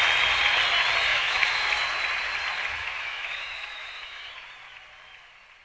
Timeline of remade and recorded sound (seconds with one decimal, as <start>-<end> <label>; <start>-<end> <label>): 0.0-1.1 recorded; 1.1-1.7 remade; 1.7-2.8 recorded; 2.8-4.3 remade; 4.3-5.6 recorded